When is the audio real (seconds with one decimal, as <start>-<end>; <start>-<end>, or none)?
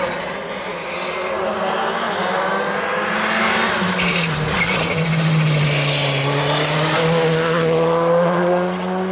0.0-9.1